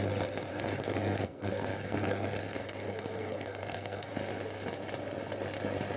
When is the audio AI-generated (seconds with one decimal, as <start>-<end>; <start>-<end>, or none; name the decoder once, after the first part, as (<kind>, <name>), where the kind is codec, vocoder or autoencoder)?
0.5-4.1 (codec, SNAC)